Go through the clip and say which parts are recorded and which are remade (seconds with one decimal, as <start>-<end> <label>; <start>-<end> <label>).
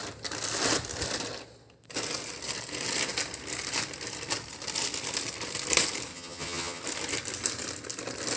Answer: 0.0-6.1 recorded; 6.1-6.8 remade; 6.8-8.4 recorded